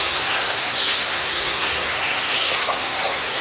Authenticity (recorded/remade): remade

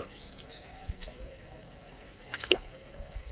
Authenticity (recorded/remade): remade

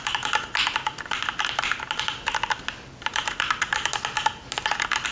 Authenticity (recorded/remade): recorded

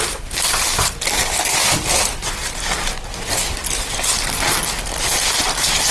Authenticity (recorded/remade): recorded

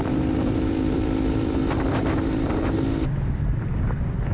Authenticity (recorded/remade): remade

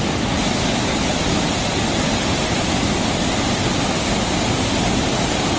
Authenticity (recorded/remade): recorded